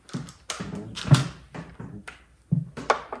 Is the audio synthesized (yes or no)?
no